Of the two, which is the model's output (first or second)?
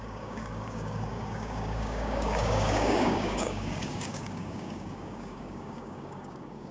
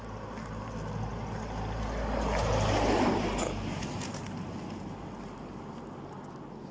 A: first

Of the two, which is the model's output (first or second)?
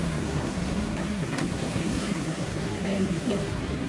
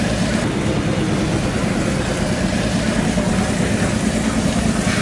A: first